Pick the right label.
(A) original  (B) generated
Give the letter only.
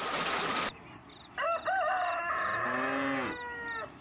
A